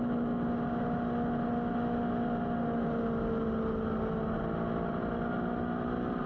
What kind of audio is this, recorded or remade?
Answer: recorded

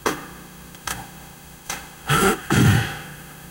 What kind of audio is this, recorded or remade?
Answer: remade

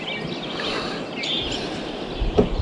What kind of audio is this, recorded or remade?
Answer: recorded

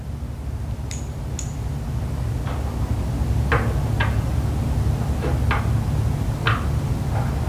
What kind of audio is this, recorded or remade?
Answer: recorded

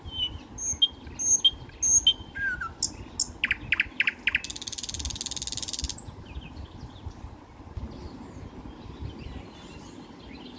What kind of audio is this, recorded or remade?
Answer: recorded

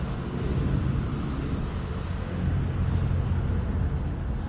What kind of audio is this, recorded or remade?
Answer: recorded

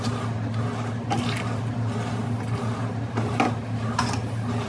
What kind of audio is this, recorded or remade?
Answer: recorded